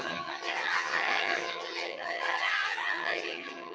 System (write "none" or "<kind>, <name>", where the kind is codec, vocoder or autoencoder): vocoder, HiFi-GAN